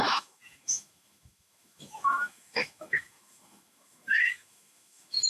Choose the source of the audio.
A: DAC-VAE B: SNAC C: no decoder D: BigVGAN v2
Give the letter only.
A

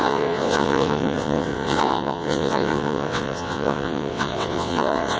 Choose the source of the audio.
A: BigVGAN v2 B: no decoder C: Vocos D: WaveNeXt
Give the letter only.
D